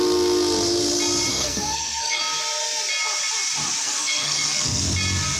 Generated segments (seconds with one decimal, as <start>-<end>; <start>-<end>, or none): 1.3-2.2; 3.8-4.8